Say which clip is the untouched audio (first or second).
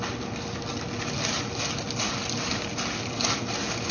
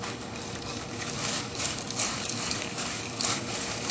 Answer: first